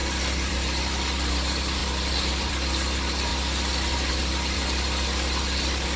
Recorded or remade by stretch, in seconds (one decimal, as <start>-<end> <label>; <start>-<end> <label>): 0.0-6.0 recorded